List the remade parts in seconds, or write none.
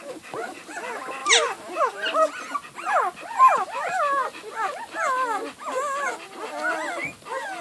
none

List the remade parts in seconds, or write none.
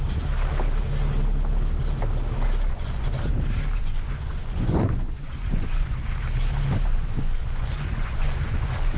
2.7-3.3 (vocoder, Vocos); 3.8-6.1; 6.9-9.0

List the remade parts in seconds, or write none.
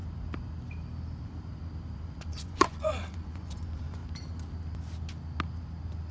2.2-4.0 (vocoder, Vocos)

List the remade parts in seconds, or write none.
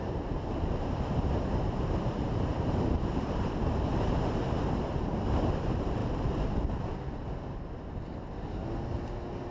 0.0-6.0 (vocoder, BigVGAN v2)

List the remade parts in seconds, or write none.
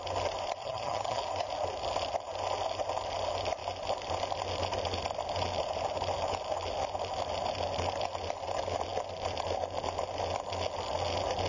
0.6-1.2 (vocoder, HiFi-GAN)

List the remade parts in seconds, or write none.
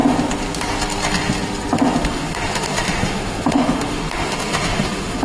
2.0-5.2 (autoencoder, DAC-VAE)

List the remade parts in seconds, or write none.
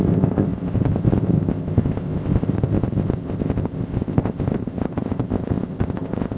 0.0-6.4 (codec, ZipCodec)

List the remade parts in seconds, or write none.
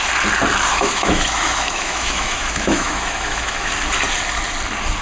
0.7-3.7 (autoencoder, DAC-VAE)